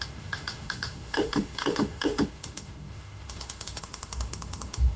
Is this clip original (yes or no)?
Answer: no